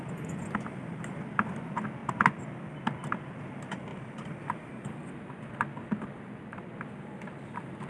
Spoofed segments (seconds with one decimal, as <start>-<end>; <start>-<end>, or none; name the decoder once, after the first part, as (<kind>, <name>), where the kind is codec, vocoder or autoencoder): 2.0-2.8 (vocoder, BigVGAN v2)